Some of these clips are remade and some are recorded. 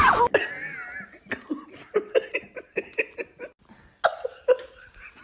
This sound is recorded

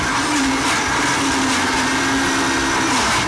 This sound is recorded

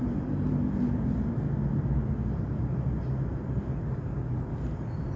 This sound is recorded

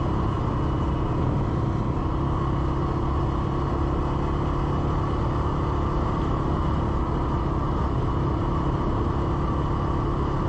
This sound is recorded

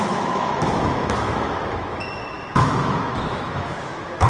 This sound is remade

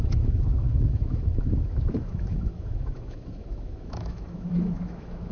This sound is remade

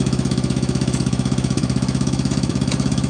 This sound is remade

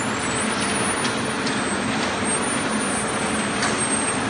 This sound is recorded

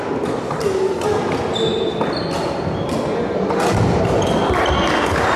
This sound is recorded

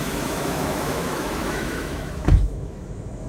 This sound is remade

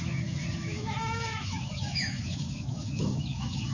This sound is remade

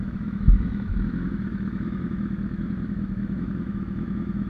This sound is remade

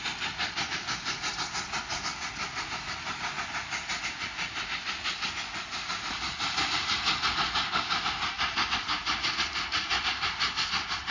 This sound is recorded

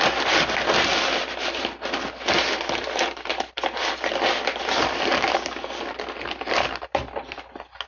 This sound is recorded